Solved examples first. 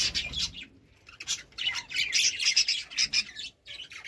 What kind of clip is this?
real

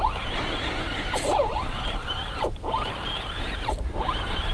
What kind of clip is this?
fake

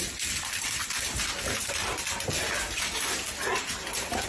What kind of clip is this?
fake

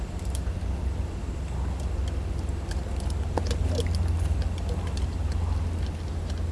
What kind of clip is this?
real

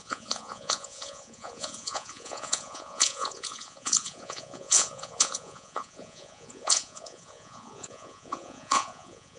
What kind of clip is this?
fake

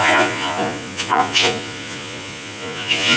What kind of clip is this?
fake